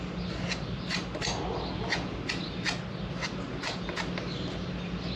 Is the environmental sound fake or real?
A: real